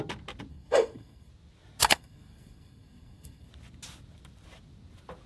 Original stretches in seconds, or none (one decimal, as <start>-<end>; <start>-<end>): 0.0-0.5; 1.3-1.8; 3.5-5.3